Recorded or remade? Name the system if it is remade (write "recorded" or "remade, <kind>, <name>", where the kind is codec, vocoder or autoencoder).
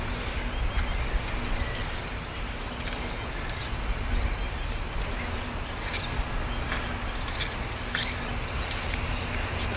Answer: recorded